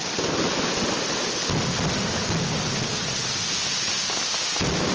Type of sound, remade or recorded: recorded